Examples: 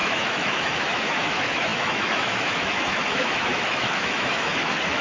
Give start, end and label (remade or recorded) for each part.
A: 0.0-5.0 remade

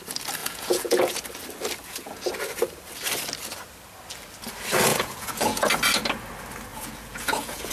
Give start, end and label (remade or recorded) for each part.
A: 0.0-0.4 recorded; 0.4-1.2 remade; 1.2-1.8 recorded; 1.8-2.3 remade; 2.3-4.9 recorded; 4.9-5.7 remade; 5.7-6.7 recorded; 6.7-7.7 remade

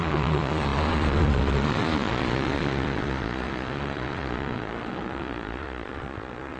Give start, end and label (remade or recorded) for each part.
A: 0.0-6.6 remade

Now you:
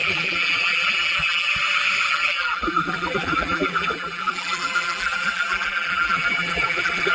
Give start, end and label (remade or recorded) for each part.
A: 0.0-1.5 remade; 1.5-2.1 recorded; 2.1-7.1 remade